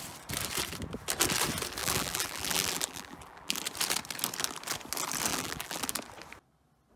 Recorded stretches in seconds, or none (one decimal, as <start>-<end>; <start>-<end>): 0.0-1.8; 3.6-5.3; 5.8-7.0